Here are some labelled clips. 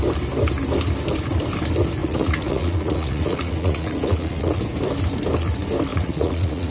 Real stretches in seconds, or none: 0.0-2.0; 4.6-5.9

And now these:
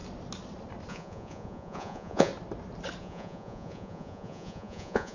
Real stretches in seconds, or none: 0.0-0.9; 2.3-3.0

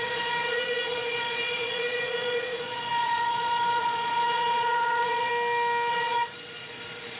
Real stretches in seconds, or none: 5.3-5.9

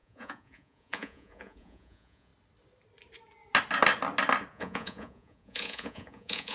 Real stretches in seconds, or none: 2.3-4.5

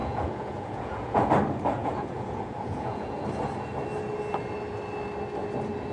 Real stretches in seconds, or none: 1.3-1.8; 3.2-5.9

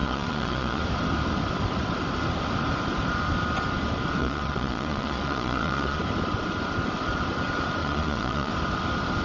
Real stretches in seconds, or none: 0.8-4.2; 6.0-7.8; 8.5-9.2

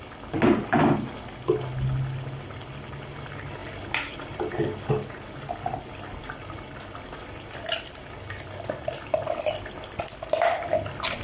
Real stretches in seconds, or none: 0.0-11.2